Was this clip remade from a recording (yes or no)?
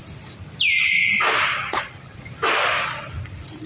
no